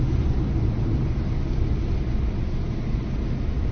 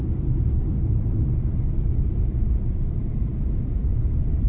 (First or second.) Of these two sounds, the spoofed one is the second